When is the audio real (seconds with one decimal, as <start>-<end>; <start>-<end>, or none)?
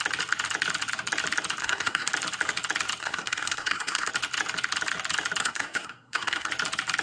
0.0-1.6; 2.1-3.0; 4.1-5.4; 6.5-7.0